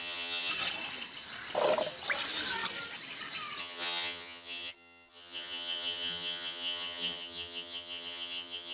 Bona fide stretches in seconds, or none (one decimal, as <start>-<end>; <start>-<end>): 0.5-3.6